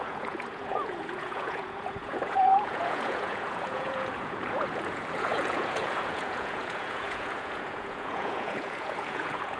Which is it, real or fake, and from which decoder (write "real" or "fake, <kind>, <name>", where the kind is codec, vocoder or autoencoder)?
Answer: fake, vocoder, Vocos